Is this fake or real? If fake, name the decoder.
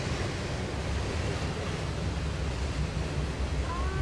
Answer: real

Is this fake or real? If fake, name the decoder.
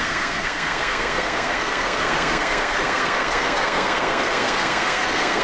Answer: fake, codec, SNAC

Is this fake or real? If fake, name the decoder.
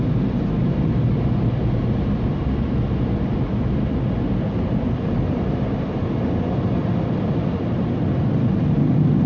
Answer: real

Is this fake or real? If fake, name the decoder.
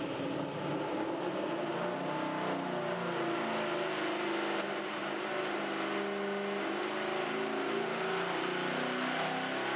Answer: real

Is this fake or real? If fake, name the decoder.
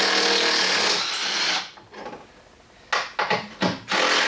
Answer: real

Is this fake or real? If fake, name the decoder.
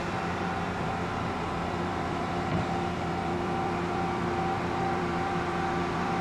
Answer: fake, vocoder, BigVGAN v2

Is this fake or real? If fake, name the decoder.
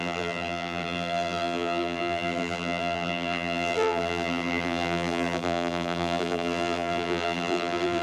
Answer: fake, vocoder, BigVGAN v2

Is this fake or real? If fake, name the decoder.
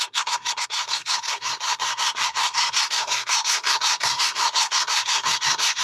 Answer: fake, codec, SNAC